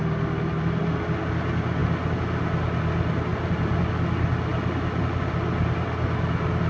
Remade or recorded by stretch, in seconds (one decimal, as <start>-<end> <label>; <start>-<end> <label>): 0.0-6.7 recorded